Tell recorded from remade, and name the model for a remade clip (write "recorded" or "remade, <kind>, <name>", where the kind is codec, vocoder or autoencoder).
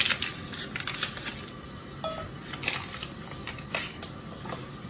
recorded